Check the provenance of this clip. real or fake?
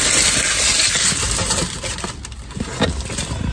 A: real